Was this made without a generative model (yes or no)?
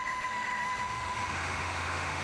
no